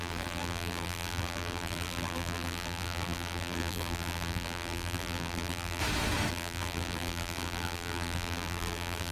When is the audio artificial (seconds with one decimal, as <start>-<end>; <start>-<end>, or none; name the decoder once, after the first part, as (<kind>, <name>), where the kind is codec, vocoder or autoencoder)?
0.0-5.8 (vocoder, BigVGAN v2); 6.3-9.1